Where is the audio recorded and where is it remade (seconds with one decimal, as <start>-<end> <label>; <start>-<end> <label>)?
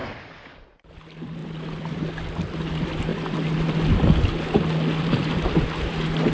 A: 0.0-0.9 recorded; 0.9-1.4 remade; 1.4-2.7 recorded; 2.7-3.1 remade; 3.1-5.0 recorded; 5.0-6.3 remade